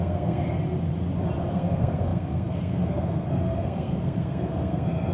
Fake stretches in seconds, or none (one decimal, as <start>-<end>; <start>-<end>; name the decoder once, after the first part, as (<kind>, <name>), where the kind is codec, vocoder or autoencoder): 0.0-0.5 (codec, SNAC); 1.5-5.1